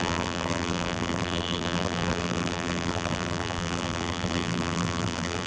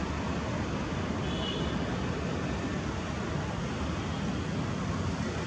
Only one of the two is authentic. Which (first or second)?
second